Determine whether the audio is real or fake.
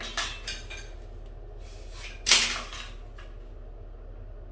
real